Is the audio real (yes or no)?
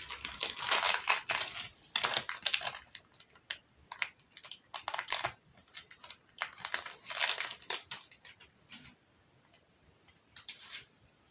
yes